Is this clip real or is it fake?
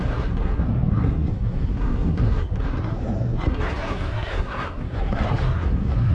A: fake